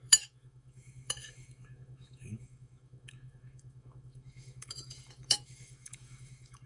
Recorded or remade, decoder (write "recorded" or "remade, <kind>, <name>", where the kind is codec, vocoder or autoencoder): remade, autoencoder, DAC-VAE